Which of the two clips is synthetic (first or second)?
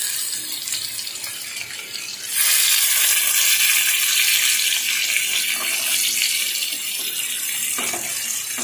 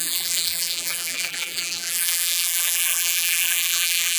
second